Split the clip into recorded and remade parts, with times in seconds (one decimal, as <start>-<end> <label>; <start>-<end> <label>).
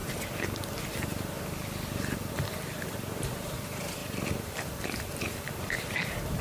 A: 0.0-2.3 recorded; 2.3-6.4 remade